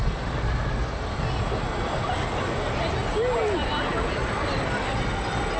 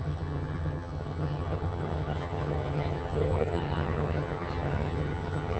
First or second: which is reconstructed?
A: second